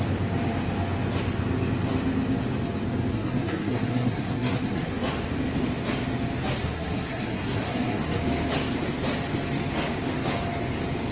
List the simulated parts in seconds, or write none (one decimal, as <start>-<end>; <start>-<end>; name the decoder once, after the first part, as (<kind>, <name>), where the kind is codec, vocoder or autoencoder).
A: 3.1-4.9 (codec, SNAC); 6.6-8.2

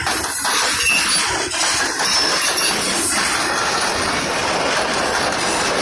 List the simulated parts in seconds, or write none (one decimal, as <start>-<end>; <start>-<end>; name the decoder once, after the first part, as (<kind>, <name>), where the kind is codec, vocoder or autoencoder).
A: none